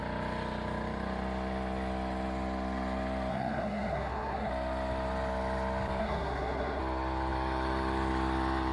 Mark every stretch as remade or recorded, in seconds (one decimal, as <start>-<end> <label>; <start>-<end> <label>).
0.0-3.3 recorded; 3.3-4.5 remade; 4.5-6.0 recorded; 6.0-6.8 remade; 6.8-8.7 recorded